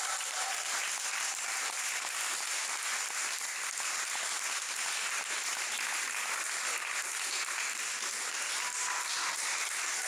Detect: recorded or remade recorded